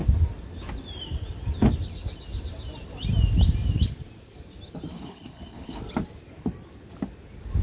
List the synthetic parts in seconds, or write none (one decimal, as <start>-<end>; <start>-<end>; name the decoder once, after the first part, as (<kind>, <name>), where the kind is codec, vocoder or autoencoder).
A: 4.9-5.8 (codec, HILCodec)